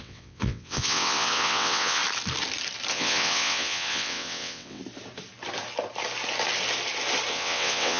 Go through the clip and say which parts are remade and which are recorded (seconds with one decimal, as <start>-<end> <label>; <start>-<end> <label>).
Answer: 0.0-2.0 remade; 2.0-2.9 recorded; 2.9-4.8 remade; 4.8-7.3 recorded; 7.3-8.0 remade